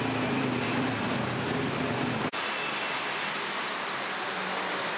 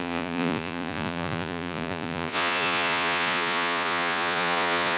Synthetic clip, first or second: second